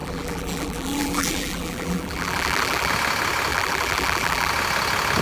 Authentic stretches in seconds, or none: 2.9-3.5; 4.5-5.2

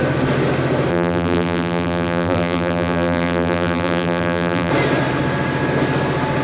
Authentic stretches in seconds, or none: 0.0-0.9; 4.7-6.4

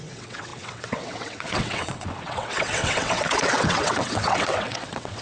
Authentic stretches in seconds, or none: none

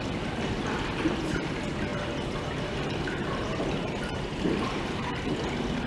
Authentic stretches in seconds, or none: 0.0-1.9; 5.1-5.9

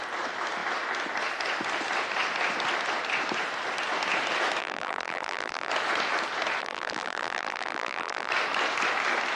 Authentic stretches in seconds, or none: 0.0-4.6; 5.7-6.6; 8.3-9.4

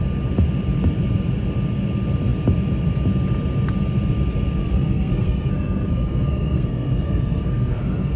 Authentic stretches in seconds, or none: 0.0-4.6